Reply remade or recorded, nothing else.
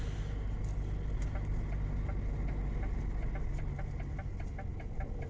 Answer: recorded